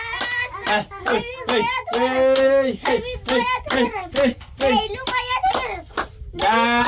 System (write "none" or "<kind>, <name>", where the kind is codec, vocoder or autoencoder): none